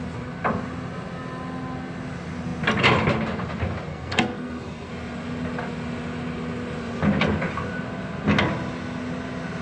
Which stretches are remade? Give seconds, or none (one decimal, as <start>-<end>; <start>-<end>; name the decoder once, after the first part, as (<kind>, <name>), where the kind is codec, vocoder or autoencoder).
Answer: 3.9-4.9 (codec, SNAC)